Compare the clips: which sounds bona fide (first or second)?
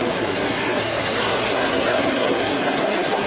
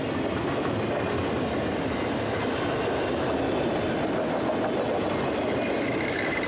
second